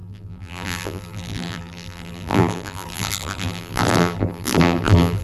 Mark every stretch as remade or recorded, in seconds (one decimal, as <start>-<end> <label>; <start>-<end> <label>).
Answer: 0.0-5.2 remade